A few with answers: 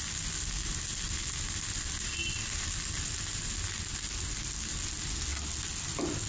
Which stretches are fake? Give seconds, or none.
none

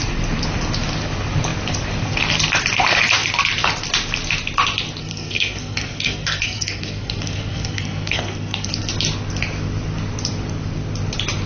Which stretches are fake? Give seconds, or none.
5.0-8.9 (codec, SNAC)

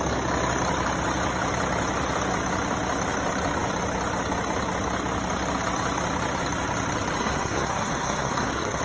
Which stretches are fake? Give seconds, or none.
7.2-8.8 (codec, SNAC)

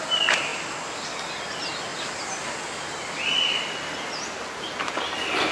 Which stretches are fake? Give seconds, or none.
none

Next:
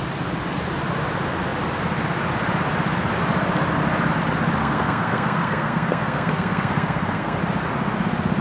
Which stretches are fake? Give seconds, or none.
4.6-7.4 (codec, SNAC)

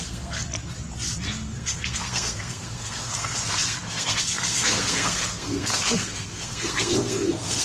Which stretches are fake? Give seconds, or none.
0.0-0.4 (codec, SNAC); 1.3-7.6